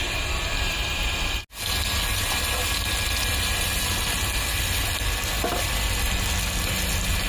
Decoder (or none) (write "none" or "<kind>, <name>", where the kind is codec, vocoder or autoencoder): none